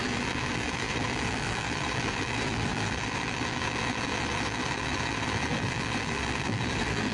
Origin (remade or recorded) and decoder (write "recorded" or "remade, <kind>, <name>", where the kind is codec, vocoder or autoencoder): remade, vocoder, BigVGAN v2